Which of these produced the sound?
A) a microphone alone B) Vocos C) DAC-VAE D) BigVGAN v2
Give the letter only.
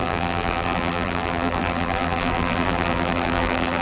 D